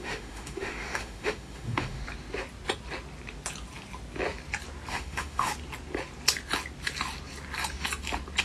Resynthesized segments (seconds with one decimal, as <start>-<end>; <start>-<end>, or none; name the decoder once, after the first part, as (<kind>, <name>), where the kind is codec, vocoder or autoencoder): 0.0-2.0 (autoencoder, DAC-VAE); 4.9-5.5